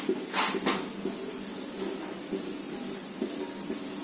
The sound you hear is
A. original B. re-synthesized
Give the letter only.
A